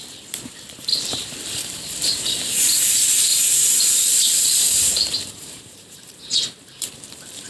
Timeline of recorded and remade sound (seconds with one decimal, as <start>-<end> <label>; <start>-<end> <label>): 0.0-3.3 remade; 3.3-3.8 recorded; 3.8-7.5 remade